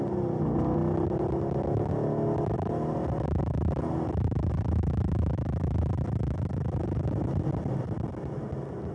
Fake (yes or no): no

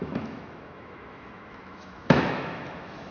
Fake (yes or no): yes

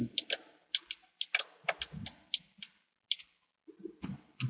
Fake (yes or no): no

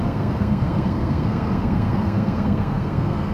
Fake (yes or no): yes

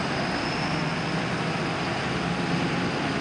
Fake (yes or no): no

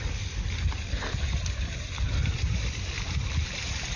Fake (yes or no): yes